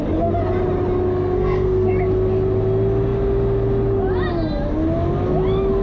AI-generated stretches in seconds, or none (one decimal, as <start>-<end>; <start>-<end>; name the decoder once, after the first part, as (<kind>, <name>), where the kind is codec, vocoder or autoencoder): 1.1-1.9 (codec, SNAC)